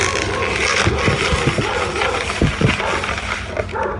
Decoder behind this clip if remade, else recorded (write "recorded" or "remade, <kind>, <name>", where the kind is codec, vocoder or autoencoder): recorded